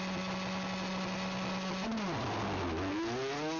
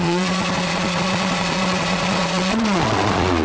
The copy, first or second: second